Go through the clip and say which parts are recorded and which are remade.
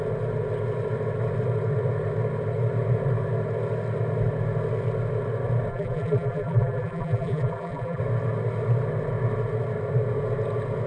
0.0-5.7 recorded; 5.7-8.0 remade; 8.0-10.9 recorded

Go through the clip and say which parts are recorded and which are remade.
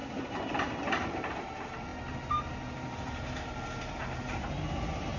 0.0-5.2 recorded